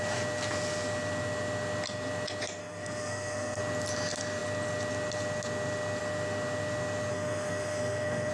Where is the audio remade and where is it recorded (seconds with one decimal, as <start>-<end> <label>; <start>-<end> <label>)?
0.0-2.6 recorded; 2.6-3.6 remade; 3.6-7.1 recorded; 7.1-8.3 remade